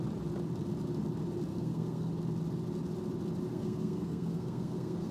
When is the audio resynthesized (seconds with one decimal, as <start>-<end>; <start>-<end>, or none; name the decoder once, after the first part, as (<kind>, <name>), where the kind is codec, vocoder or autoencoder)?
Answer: 1.5-2.1 (codec, SNAC); 3.5-5.1